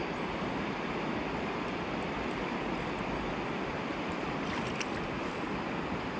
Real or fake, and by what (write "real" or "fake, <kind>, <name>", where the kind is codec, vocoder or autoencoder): real